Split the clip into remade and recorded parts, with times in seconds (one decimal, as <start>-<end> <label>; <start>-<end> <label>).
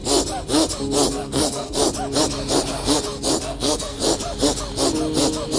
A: 0.0-1.1 recorded; 1.1-1.8 remade; 1.8-3.4 recorded; 3.4-4.0 remade; 4.0-5.6 recorded